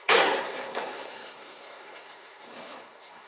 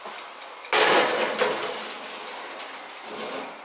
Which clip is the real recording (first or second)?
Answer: second